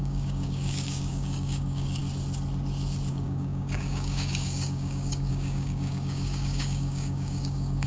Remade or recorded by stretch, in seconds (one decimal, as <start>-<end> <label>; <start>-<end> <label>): 0.0-2.0 remade; 2.0-3.1 recorded; 3.1-7.9 remade